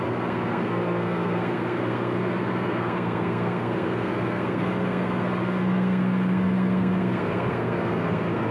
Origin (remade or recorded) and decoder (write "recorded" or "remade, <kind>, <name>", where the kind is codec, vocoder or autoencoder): remade, codec, SNAC